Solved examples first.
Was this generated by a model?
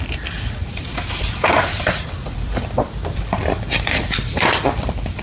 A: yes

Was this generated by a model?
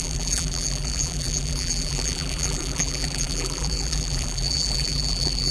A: yes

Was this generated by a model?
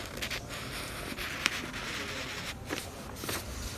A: no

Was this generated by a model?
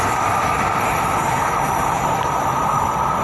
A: yes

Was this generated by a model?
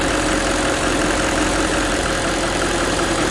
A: yes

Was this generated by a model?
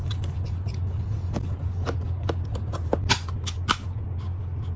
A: yes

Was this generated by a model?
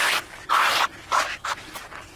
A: no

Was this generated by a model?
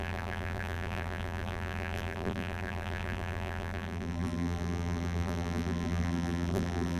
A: yes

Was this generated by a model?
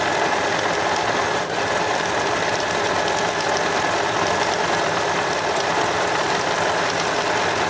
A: no